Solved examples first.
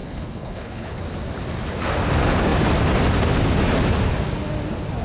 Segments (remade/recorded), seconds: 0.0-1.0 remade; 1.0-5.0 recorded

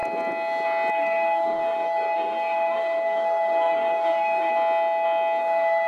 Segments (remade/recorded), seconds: 0.0-0.9 recorded; 0.9-4.5 remade; 4.5-5.4 recorded; 5.4-5.9 remade

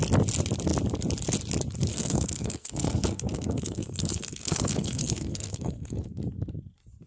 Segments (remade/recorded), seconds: 0.0-1.9 recorded; 1.9-6.2 remade; 6.2-7.1 recorded

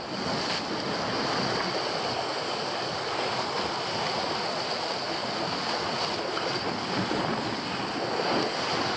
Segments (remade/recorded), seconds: 0.0-9.0 recorded